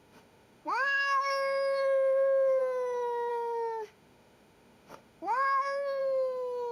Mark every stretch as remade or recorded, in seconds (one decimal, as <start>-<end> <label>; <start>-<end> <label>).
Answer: 0.0-2.6 remade; 2.6-3.3 recorded; 3.3-6.0 remade; 6.0-6.7 recorded